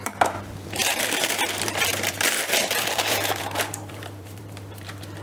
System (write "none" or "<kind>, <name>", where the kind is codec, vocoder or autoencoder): vocoder, BigVGAN v2